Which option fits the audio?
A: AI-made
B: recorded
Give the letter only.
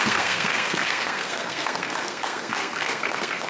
A